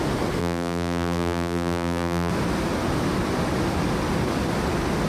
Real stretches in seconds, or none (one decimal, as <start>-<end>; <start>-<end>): 0.0-0.4; 2.3-5.1